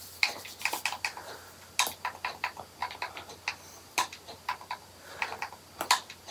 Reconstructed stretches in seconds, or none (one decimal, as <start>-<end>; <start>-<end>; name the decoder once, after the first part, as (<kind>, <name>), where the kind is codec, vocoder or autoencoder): none